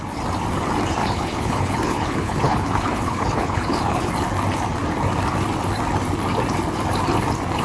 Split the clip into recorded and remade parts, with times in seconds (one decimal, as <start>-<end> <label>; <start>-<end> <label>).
0.0-1.0 recorded; 1.0-4.1 remade; 4.1-7.6 recorded